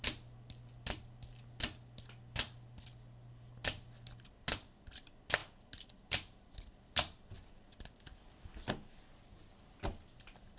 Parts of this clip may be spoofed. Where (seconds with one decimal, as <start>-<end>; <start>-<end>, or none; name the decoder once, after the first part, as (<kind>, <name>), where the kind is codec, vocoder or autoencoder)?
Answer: none